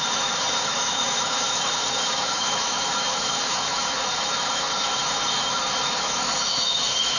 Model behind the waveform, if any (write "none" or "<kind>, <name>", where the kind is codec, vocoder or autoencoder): autoencoder, DAC-VAE